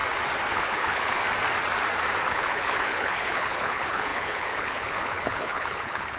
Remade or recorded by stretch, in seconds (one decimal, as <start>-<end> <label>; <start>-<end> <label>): 0.0-0.5 recorded; 0.5-1.2 remade; 1.2-2.3 recorded; 2.3-6.2 remade